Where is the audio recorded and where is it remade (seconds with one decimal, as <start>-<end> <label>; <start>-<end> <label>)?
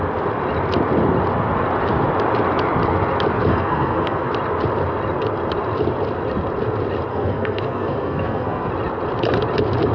0.0-3.5 recorded; 3.5-4.3 remade; 4.3-7.1 recorded; 7.1-8.7 remade; 8.7-9.9 recorded